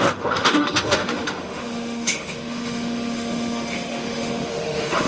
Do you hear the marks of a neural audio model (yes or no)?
yes